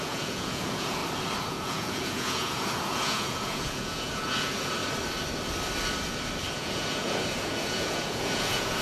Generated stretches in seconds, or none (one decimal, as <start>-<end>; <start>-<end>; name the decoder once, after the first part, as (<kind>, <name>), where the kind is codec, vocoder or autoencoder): 0.0-1.0 (vocoder, Vocos); 1.5-4.8; 6.5-8.8